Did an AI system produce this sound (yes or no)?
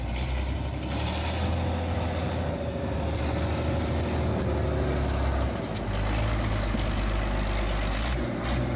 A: no